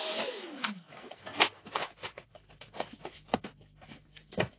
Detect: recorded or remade remade